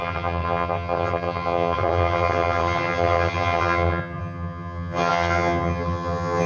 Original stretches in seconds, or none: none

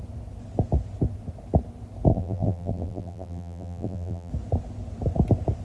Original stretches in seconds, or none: 0.0-2.1; 4.3-5.6

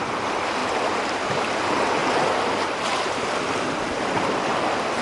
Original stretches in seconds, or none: 0.0-5.0

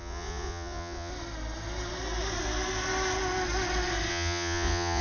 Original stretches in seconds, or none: 1.1-4.1